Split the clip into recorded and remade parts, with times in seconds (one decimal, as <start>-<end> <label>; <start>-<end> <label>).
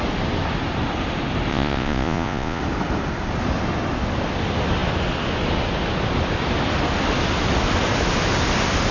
0.0-1.5 recorded; 1.5-2.6 remade; 2.6-8.9 recorded